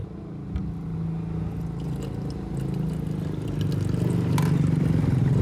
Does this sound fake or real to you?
real